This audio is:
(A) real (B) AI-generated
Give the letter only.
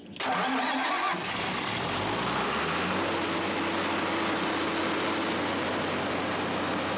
A